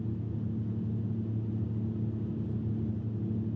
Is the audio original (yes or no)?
yes